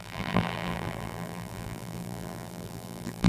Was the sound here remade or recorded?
remade